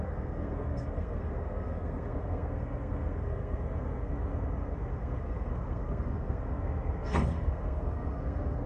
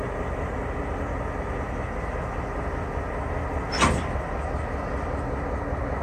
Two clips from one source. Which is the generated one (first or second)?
first